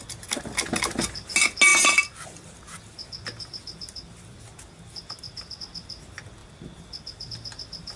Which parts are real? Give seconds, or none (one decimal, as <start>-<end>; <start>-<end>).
0.0-8.0